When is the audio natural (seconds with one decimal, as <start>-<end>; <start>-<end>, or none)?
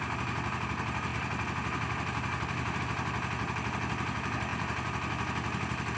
0.0-6.0